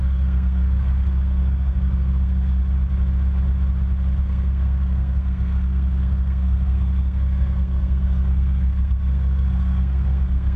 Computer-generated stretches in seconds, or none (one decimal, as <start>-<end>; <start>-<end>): 0.0-2.6; 4.2-10.6